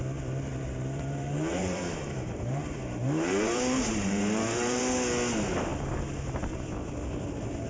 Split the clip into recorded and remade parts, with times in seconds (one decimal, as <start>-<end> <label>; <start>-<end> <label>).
0.0-0.5 recorded; 0.5-4.8 remade; 4.8-7.7 recorded